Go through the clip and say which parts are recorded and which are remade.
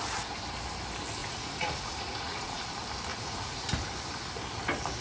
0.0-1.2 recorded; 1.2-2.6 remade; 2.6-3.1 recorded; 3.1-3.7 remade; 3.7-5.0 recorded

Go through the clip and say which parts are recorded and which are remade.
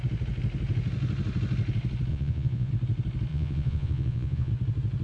0.0-2.1 recorded; 2.1-2.7 remade; 2.7-3.3 recorded; 3.3-4.5 remade; 4.5-5.0 recorded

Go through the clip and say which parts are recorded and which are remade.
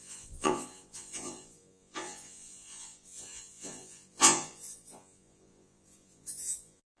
0.0-7.0 remade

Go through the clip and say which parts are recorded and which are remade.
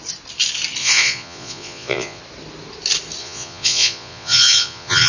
0.0-0.8 recorded; 0.8-2.2 remade; 2.2-3.2 recorded; 3.2-5.1 remade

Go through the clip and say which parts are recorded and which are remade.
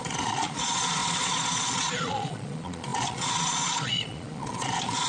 0.0-5.1 remade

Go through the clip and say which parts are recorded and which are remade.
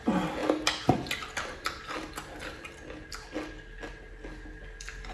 0.0-5.1 recorded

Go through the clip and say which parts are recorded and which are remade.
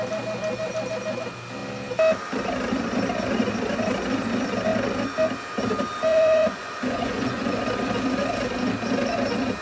0.0-6.1 recorded; 6.1-7.6 remade; 7.6-9.6 recorded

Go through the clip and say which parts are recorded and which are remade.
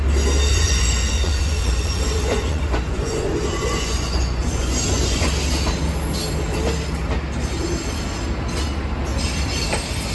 0.0-0.5 recorded; 0.5-5.3 remade; 5.3-10.1 recorded